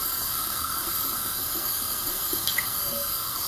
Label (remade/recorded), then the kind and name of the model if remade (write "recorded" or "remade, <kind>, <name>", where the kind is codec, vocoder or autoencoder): remade, codec, SNAC